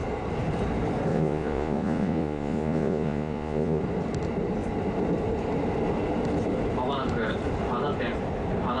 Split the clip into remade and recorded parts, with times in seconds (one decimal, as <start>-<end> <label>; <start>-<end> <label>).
0.0-1.1 recorded; 1.1-3.8 remade; 3.8-8.8 recorded